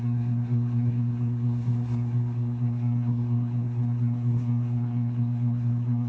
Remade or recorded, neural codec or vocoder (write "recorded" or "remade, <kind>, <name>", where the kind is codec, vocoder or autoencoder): remade, codec, SNAC